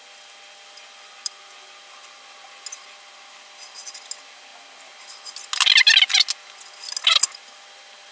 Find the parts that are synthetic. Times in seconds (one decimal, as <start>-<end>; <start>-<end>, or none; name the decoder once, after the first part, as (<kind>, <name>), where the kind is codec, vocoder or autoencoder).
none